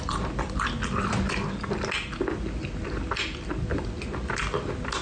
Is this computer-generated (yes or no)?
no